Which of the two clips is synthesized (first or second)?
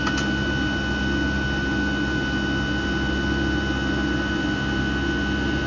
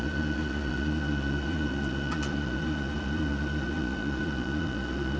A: second